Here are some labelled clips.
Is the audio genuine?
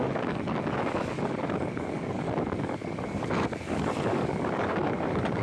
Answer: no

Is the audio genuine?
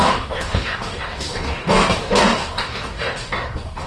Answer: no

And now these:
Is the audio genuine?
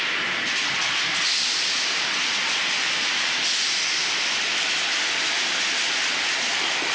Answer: yes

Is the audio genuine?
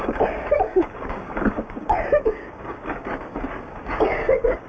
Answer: no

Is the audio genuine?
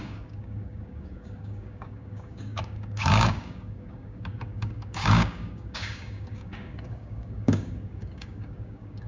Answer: no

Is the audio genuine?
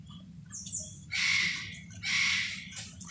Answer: yes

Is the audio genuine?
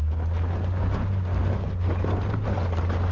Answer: yes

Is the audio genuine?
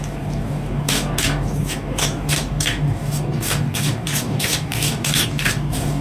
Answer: no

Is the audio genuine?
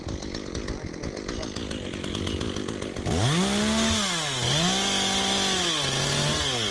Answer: yes